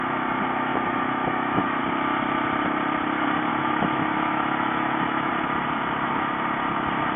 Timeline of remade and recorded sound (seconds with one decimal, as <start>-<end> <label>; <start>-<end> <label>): 0.0-0.7 recorded; 0.7-1.8 remade; 1.8-3.5 recorded; 3.5-5.3 remade; 5.3-7.2 recorded